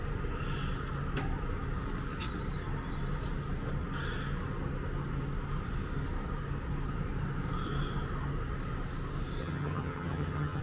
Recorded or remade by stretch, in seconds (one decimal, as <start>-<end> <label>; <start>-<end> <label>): 0.0-9.4 recorded; 9.4-10.6 remade